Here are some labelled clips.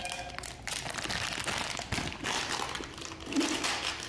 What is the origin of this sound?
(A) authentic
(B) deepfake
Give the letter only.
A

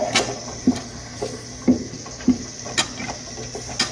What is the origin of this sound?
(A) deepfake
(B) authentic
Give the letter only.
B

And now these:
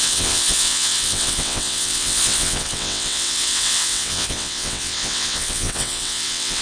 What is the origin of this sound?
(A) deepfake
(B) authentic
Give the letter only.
A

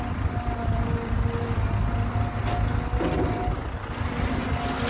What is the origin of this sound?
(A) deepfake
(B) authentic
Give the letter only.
B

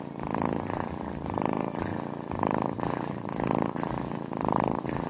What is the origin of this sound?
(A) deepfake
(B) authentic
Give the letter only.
B